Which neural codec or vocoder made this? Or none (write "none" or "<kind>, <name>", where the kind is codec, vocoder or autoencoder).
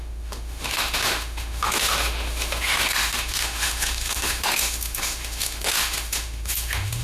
autoencoder, DAC-VAE